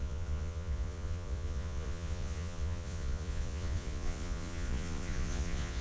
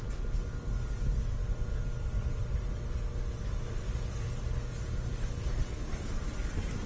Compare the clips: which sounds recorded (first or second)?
second